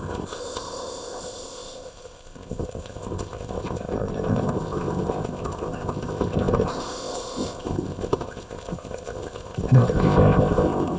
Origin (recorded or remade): remade